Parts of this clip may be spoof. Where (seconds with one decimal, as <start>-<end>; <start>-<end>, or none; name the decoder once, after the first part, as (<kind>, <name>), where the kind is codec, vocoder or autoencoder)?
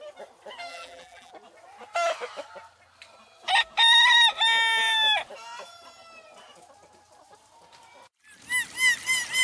0.7-1.3 (vocoder, BigVGAN v2)